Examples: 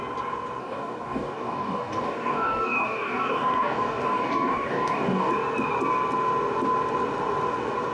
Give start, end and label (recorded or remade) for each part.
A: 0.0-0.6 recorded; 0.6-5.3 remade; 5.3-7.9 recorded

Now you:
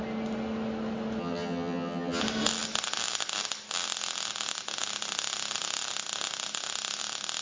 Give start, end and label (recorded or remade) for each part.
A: 0.0-1.2 recorded; 1.2-2.2 remade; 2.2-7.4 recorded

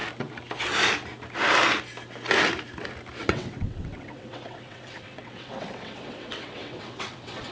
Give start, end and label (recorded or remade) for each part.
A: 0.0-3.2 recorded; 3.2-7.5 remade

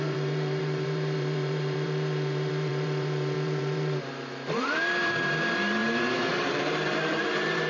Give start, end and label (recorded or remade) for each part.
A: 0.0-5.8 remade; 5.8-6.3 recorded; 6.3-7.7 remade

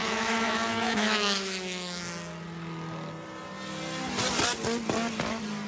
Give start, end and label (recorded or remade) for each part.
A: 0.0-2.0 remade; 2.0-5.7 recorded

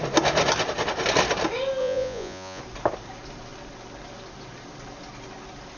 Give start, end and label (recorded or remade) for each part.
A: 0.0-1.8 recorded; 1.8-2.6 remade; 2.6-5.8 recorded